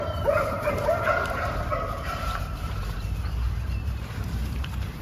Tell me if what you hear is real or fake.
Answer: fake